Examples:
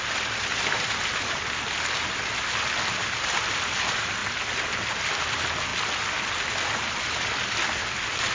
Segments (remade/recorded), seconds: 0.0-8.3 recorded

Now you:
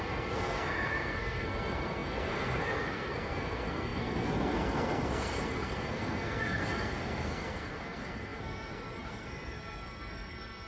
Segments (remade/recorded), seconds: 0.0-10.7 remade

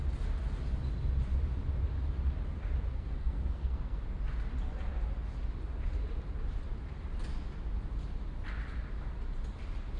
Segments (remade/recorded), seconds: 0.0-2.9 recorded; 2.9-4.0 remade; 4.0-10.0 recorded

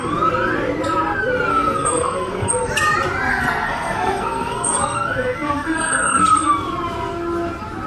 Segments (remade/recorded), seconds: 0.0-1.5 recorded; 1.5-2.5 remade; 2.5-3.3 recorded; 3.3-6.5 remade; 6.5-7.9 recorded